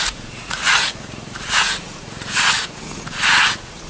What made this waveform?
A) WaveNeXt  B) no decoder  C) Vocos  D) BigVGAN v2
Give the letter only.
C